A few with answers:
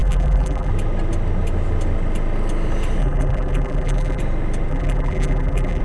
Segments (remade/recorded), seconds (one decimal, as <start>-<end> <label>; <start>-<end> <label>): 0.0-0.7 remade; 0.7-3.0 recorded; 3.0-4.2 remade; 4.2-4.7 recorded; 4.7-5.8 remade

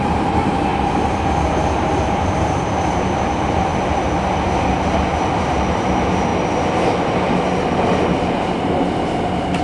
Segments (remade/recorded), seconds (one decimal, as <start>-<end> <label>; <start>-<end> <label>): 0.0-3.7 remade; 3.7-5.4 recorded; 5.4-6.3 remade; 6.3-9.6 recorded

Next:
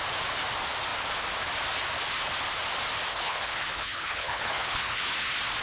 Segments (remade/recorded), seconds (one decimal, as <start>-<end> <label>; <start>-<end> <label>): 0.0-3.1 recorded; 3.1-5.0 remade; 5.0-5.6 recorded

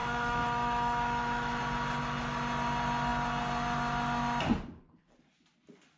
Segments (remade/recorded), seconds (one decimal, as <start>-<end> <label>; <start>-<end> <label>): 0.0-1.6 remade; 1.6-6.0 recorded

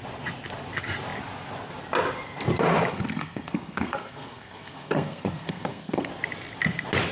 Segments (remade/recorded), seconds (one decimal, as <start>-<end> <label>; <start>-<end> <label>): 0.0-2.9 recorded; 2.9-6.1 remade; 6.1-7.1 recorded

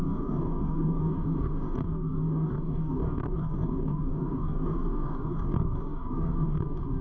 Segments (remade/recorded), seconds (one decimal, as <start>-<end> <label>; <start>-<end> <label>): 0.0-7.0 remade

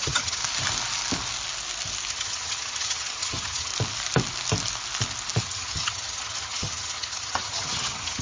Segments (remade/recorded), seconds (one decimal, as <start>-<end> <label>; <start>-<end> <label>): 0.0-0.4 remade; 0.4-2.1 recorded; 2.1-3.7 remade; 3.7-5.4 recorded; 5.4-8.2 remade

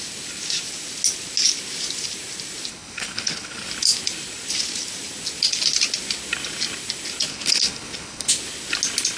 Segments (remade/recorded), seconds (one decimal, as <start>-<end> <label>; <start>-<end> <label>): 0.0-2.7 recorded; 2.7-3.7 remade; 3.7-7.3 recorded; 7.3-8.3 remade; 8.3-9.2 recorded